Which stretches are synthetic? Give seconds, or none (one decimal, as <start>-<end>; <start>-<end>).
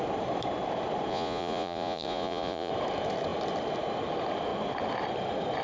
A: 1.1-2.7